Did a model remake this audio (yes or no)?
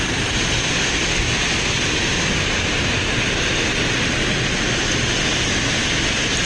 no